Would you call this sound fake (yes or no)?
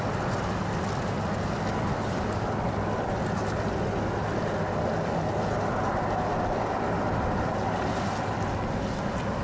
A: no